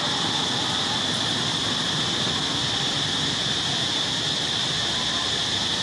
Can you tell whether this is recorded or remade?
remade